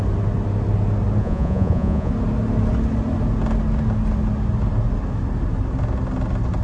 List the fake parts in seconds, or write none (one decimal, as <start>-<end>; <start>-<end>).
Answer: 1.2-2.1